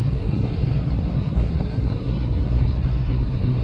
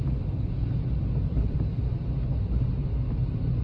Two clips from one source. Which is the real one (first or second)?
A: second